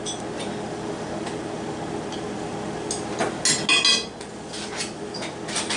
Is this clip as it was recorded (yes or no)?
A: yes